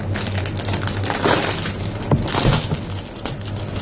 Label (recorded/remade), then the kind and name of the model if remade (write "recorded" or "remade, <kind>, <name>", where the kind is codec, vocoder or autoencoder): recorded